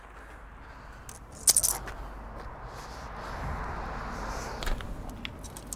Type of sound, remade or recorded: recorded